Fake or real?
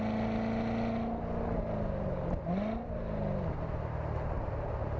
real